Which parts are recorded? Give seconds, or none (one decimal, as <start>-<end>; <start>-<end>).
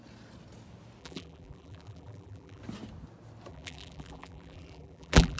0.0-1.0; 2.6-3.5